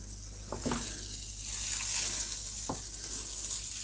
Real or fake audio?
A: real